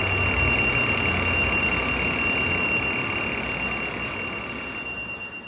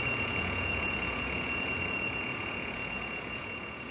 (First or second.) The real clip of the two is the first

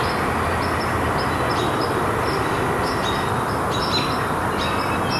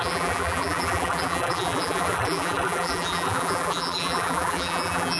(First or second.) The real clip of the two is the first